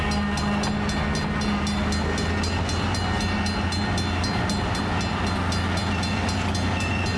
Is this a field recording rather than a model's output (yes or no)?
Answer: yes